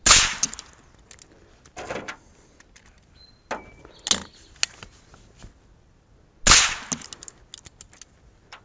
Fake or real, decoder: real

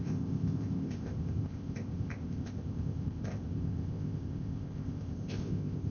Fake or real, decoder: fake, codec, ZipCodec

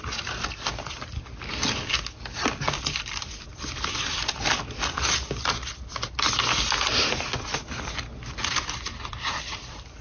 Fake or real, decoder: real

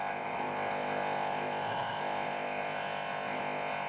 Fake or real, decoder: fake, codec, ZipCodec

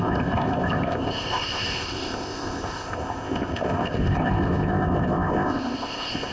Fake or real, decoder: fake, codec, ZipCodec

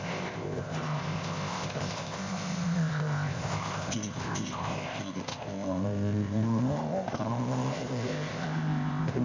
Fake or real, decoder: fake, codec, ZipCodec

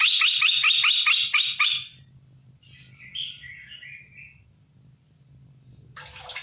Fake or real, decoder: real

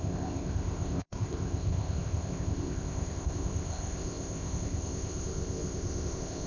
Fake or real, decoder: fake, codec, ZipCodec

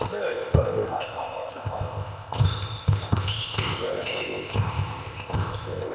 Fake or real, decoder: fake, codec, ZipCodec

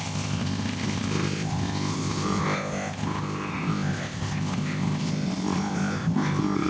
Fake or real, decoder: fake, codec, ZipCodec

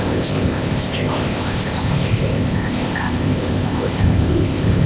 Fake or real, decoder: fake, codec, ZipCodec